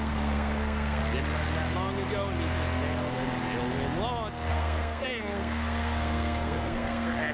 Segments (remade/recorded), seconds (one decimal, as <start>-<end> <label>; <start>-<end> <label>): 0.0-1.0 remade; 1.0-4.5 recorded; 4.5-7.3 remade

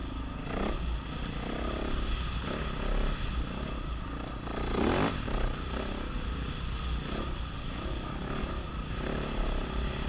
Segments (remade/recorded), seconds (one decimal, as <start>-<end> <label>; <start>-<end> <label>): 0.0-10.1 recorded

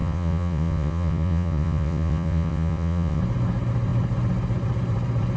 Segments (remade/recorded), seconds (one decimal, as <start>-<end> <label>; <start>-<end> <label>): 0.0-3.2 remade; 3.2-5.4 recorded

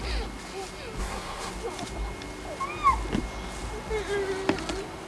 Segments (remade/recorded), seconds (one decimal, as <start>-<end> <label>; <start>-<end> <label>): 0.0-1.0 recorded; 1.0-1.5 remade; 1.5-5.1 recorded

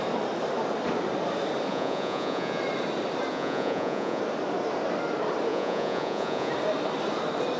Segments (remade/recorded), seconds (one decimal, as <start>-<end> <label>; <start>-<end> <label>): 0.0-1.7 recorded; 1.7-2.6 remade; 2.6-3.3 recorded; 3.3-4.2 remade; 4.2-5.5 recorded; 5.5-6.5 remade; 6.5-7.6 recorded

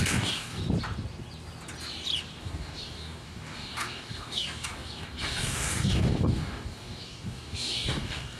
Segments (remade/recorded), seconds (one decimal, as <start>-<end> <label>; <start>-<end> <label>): 0.0-0.6 remade; 0.6-2.4 recorded; 2.4-8.4 remade

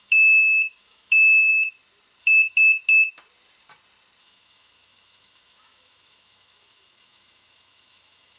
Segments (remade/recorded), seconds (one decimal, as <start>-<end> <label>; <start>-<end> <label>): 0.0-1.5 remade; 1.5-2.2 recorded; 2.2-2.8 remade; 2.8-4.2 recorded; 4.2-8.4 remade